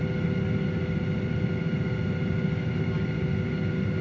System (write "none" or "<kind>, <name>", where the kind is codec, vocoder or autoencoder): none